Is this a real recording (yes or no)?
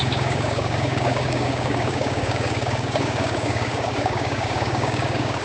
no